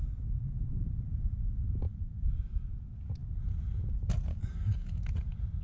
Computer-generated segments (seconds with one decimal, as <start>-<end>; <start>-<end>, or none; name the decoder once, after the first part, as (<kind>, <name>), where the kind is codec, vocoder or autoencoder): 4.3-5.0 (codec, DAC)